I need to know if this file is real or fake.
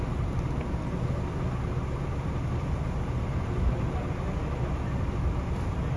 real